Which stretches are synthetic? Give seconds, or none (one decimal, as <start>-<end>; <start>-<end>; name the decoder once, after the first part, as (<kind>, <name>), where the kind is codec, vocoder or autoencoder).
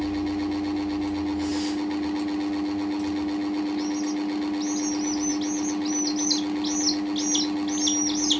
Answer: none